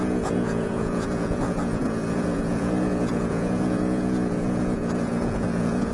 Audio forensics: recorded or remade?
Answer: remade